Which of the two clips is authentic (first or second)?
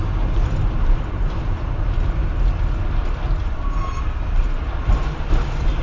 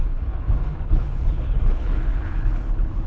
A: first